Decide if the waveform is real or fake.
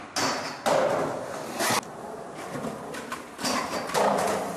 real